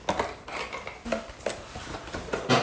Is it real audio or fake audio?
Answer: real